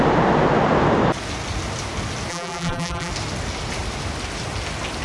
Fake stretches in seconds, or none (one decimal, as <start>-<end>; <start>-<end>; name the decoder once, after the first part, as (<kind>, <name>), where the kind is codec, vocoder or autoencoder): 2.3-3.1 (vocoder, BigVGAN v2)